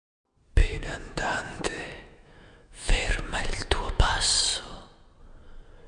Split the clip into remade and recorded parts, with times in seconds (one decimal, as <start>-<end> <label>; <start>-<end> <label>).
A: 0.0-0.6 recorded; 0.6-4.1 remade; 4.1-5.9 recorded